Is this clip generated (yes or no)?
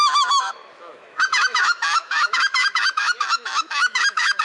yes